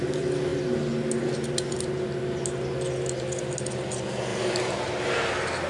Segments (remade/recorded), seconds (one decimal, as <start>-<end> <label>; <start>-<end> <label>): 0.0-4.3 recorded; 4.3-5.1 remade; 5.1-5.7 recorded